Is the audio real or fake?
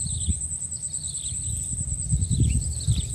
real